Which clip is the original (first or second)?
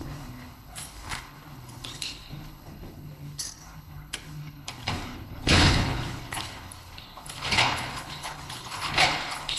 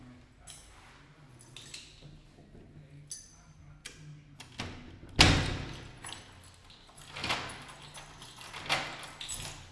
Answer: second